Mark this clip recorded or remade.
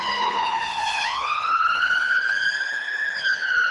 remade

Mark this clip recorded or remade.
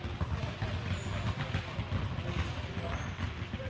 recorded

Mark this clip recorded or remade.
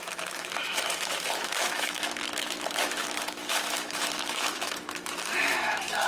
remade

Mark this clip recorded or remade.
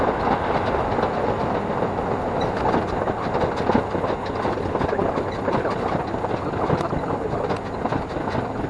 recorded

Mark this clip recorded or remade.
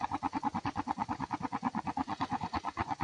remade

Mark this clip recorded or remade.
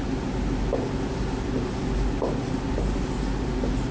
recorded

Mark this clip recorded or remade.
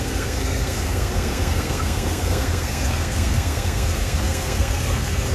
remade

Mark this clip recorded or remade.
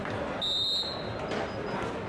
recorded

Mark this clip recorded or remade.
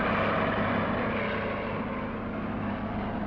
recorded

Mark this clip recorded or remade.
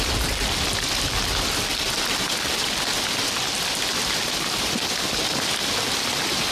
recorded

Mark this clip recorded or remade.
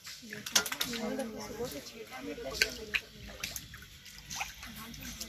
recorded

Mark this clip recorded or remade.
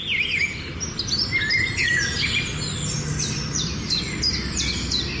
recorded